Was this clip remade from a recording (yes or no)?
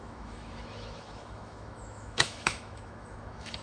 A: yes